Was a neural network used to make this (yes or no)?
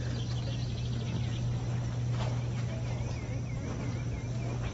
no